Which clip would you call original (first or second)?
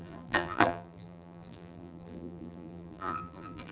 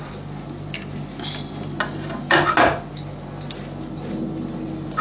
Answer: second